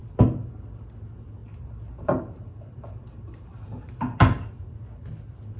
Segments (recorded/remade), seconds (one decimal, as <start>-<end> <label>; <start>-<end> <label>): 0.0-1.4 recorded; 1.4-4.4 remade; 4.4-5.6 recorded